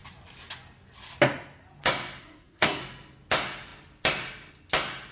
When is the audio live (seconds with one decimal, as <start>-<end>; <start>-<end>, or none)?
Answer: 0.0-2.2; 2.8-5.1